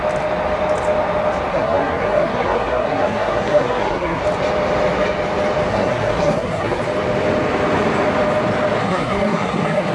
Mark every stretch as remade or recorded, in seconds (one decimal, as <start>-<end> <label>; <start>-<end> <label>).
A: 0.0-1.5 recorded; 1.5-4.2 remade; 4.2-5.7 recorded; 5.7-6.8 remade; 6.8-8.8 recorded; 8.8-9.9 remade